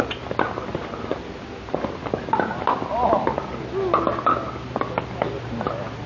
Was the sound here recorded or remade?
recorded